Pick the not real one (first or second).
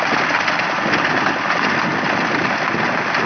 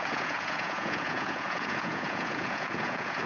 second